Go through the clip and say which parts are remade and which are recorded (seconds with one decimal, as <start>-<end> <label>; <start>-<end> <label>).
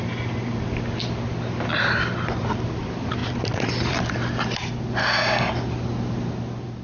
0.0-5.0 recorded; 5.0-5.5 remade; 5.5-6.8 recorded